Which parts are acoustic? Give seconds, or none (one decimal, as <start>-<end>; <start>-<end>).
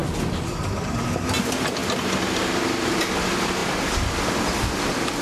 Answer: 0.0-5.2